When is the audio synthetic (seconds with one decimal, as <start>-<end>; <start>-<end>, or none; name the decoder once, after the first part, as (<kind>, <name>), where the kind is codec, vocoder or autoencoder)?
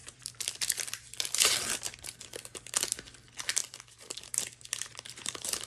0.0-2.7 (vocoder, BigVGAN v2); 3.6-4.2; 4.9-5.7